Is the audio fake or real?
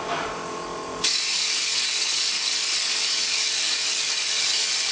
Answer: fake